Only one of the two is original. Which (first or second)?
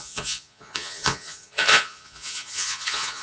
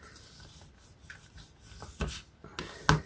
second